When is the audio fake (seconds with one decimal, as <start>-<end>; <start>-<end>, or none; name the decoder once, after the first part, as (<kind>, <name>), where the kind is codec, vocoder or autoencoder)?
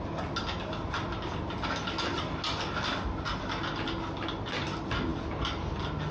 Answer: none